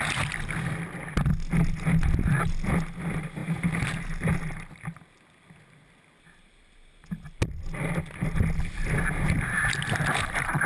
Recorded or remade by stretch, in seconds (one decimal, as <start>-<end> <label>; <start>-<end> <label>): 0.0-3.4 recorded; 3.4-5.0 remade; 5.0-10.7 recorded